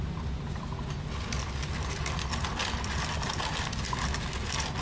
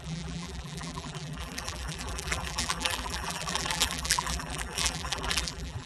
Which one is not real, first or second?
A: second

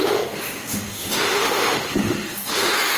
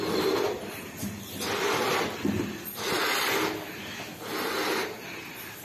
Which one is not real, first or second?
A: first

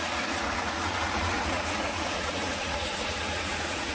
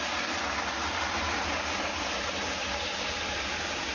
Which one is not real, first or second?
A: first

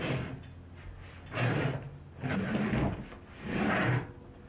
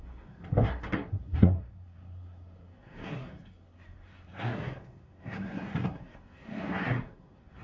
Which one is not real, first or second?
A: second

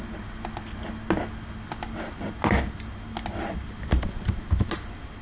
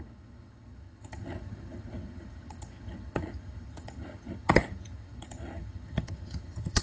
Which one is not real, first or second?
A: second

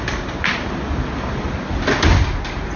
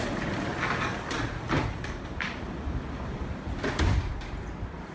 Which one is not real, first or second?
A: second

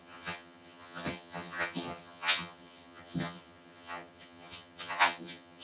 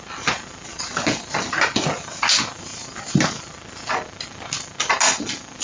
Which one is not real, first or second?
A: first